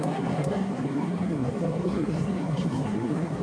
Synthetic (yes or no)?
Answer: yes